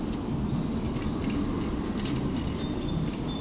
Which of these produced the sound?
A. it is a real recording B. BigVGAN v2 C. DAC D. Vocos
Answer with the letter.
A